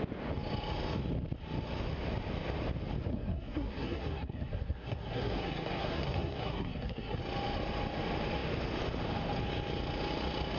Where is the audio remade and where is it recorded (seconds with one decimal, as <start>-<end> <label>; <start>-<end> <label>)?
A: 0.0-3.1 recorded; 3.1-7.2 remade; 7.2-10.6 recorded